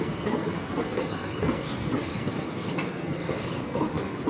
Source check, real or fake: fake